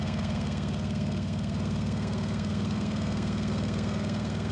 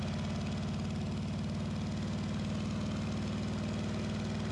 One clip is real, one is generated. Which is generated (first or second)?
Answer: first